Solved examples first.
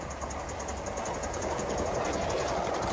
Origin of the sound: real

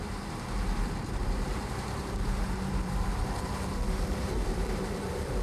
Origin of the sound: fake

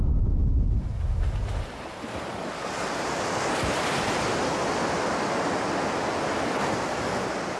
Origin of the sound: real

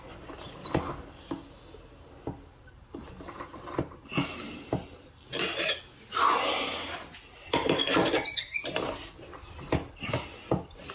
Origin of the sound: real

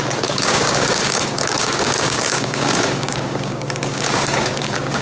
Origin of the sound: fake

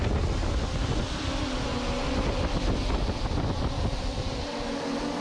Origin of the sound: real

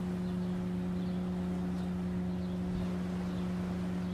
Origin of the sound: real